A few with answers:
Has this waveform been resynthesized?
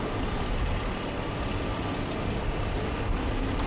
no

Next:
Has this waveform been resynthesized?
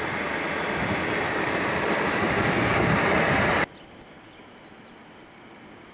yes